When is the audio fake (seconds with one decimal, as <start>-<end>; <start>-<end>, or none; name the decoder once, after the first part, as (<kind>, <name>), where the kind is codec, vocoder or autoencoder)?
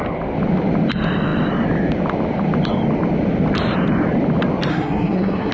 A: 4.7-5.5 (codec, SNAC)